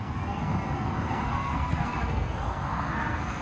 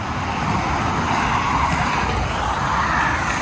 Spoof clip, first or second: first